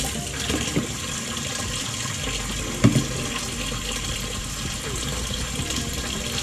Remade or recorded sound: recorded